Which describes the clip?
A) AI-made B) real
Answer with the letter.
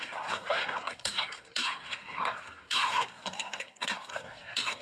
A